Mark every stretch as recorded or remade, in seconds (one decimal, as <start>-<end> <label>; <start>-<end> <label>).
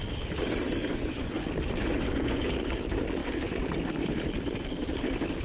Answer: 0.0-0.8 recorded; 0.8-1.3 remade; 1.3-1.8 recorded; 1.8-2.4 remade; 2.4-5.4 recorded